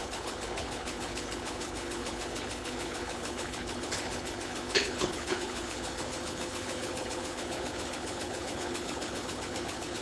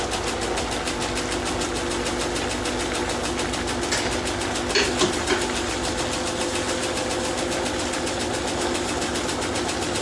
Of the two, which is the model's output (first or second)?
first